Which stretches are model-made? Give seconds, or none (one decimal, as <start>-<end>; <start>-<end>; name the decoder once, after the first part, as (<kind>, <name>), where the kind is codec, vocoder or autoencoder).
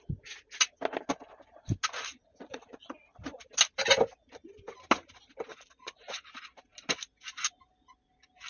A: 2.1-3.5 (vocoder, Vocos); 5.5-6.3